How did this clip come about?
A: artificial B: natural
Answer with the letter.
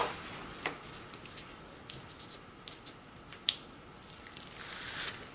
B